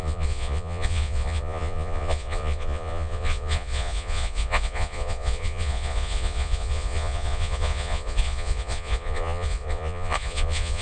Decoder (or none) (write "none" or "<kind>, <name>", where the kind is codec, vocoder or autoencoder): vocoder, Vocos